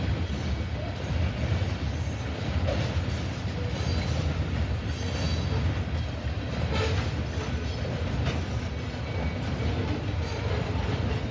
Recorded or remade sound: recorded